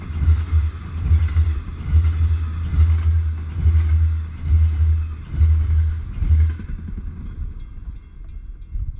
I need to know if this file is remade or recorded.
recorded